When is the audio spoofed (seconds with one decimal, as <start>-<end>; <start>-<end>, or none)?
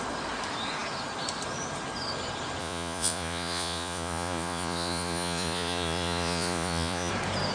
2.6-7.1